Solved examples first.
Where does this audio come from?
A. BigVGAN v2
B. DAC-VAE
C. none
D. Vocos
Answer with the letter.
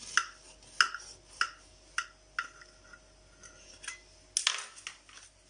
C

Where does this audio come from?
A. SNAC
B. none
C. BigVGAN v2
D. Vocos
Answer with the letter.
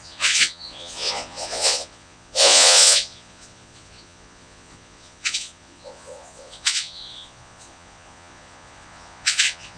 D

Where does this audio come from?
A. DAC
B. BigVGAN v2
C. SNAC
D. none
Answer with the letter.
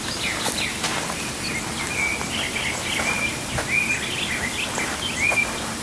D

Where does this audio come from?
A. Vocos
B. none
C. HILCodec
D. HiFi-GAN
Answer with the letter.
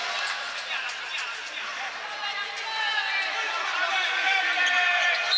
B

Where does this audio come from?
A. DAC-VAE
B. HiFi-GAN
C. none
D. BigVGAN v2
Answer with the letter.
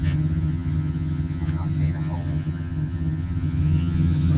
B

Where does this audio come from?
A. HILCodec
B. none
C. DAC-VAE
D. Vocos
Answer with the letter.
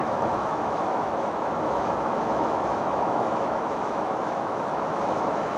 C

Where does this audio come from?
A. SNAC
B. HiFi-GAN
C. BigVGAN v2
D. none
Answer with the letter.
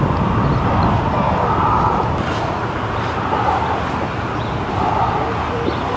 D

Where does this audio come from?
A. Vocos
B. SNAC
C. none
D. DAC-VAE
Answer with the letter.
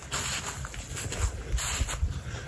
C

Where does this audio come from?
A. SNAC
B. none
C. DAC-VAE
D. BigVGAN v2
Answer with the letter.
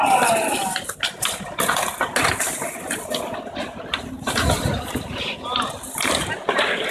B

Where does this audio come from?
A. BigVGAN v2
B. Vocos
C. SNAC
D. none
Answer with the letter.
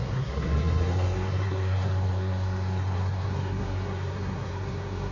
C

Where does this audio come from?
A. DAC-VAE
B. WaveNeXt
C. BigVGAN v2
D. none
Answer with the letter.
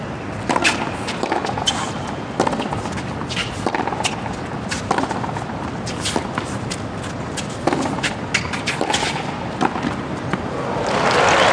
D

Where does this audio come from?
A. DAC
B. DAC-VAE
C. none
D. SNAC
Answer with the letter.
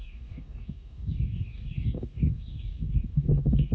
A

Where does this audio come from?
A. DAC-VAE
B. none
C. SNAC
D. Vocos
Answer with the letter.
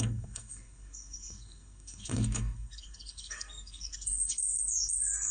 C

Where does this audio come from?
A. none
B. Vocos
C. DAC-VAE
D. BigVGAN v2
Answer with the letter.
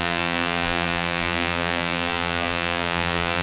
D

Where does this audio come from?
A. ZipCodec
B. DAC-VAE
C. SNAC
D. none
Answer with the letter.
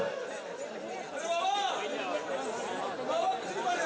D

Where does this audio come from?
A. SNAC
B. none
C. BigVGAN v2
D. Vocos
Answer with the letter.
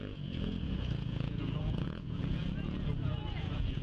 D